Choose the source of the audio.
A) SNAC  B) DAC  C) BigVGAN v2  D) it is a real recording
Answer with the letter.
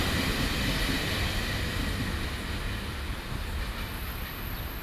D